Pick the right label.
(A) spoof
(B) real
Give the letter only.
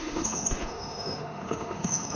A